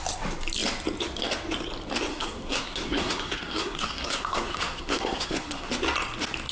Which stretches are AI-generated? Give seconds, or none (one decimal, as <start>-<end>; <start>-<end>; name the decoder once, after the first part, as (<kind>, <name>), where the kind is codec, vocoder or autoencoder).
2.1-5.7 (codec, SNAC)